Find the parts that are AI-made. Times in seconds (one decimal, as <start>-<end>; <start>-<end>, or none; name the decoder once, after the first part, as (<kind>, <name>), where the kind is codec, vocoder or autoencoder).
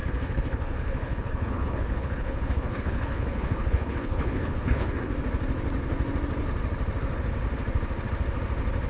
0.0-5.1 (codec, HILCodec)